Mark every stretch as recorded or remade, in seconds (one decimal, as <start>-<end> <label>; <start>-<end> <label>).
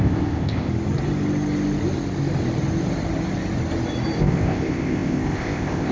0.0-0.7 remade; 0.7-4.2 recorded; 4.2-5.9 remade